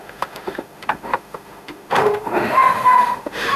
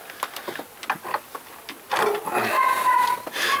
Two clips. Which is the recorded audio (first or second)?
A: second